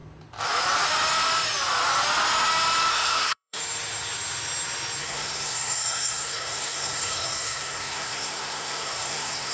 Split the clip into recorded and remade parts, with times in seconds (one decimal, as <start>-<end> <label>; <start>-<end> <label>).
0.0-2.9 recorded; 2.9-3.6 remade; 3.6-5.0 recorded; 5.0-9.5 remade